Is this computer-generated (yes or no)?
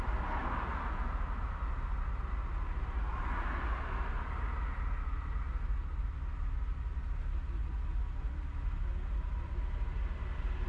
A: no